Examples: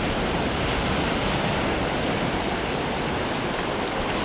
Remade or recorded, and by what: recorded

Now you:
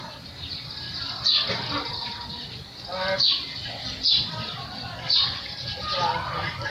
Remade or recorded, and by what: remade, vocoder, BigVGAN v2